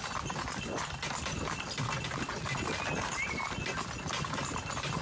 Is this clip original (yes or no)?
yes